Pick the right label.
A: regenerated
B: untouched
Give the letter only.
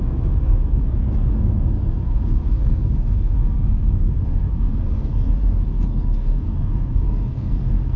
A